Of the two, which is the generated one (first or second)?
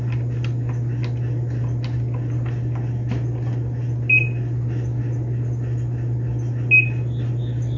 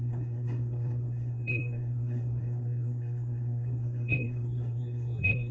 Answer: second